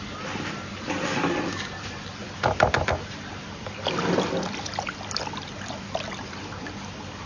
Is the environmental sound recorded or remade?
recorded